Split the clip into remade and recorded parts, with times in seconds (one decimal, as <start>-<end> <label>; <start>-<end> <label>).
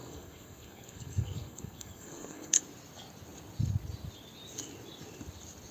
0.0-2.6 remade; 2.6-5.7 recorded